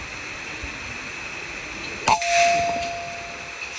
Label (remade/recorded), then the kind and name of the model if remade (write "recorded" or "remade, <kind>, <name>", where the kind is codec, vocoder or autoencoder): recorded